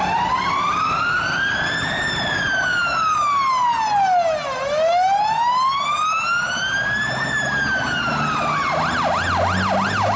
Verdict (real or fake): real